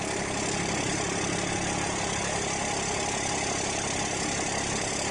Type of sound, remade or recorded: recorded